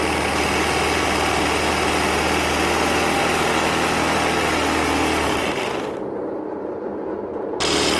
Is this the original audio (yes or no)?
yes